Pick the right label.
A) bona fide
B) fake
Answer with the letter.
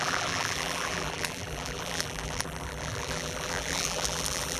B